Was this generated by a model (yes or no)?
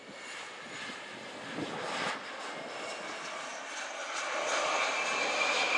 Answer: no